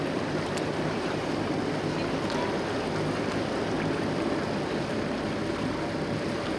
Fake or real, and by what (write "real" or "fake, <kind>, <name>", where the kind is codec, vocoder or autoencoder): real